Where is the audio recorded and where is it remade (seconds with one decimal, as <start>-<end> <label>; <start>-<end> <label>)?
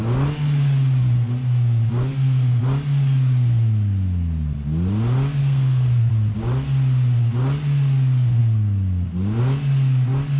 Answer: 0.0-2.1 recorded; 2.1-2.6 remade; 2.6-5.4 recorded; 5.4-6.1 remade; 6.1-10.4 recorded